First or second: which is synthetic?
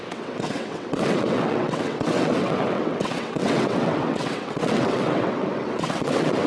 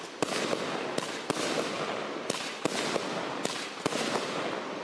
first